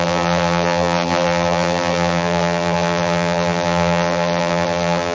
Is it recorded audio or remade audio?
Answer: remade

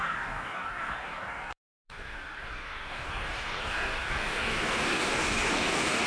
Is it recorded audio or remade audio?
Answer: remade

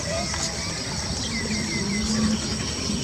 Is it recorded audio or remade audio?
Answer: recorded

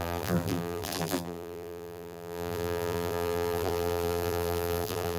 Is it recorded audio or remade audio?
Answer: remade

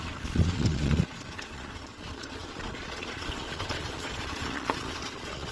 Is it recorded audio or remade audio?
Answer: remade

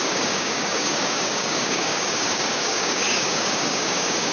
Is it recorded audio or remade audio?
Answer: remade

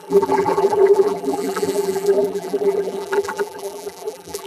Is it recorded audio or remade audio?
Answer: remade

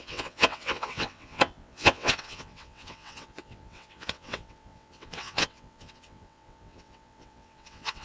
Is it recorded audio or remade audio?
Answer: remade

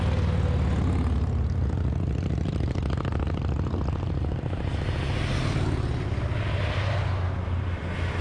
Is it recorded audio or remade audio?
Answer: recorded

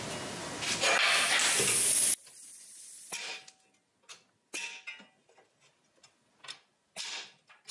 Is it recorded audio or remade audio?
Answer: recorded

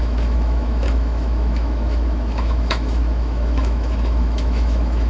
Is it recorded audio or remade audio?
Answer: remade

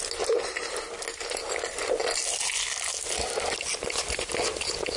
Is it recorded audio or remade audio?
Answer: recorded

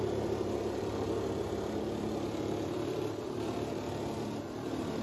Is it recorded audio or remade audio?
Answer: remade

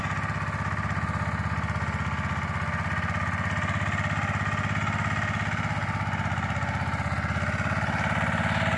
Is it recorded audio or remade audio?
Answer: recorded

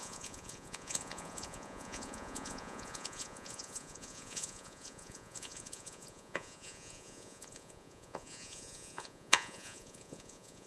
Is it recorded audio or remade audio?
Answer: remade